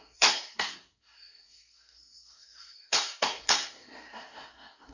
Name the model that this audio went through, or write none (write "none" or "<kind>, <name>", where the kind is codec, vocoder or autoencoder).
codec, SNAC